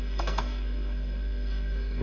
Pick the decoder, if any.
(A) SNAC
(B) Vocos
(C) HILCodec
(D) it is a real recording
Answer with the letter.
A